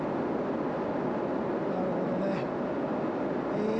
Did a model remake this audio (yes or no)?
no